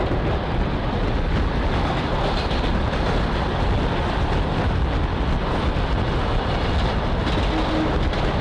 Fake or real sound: real